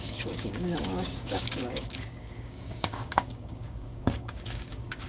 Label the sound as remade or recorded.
remade